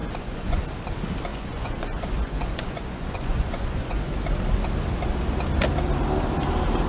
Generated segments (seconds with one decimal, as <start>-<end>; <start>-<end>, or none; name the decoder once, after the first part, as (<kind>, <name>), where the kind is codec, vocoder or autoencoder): 0.0-0.6 (vocoder, Vocos); 1.3-4.0